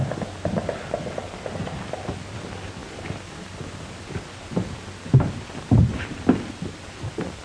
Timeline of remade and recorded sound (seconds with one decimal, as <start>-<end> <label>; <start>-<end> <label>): 0.0-7.4 recorded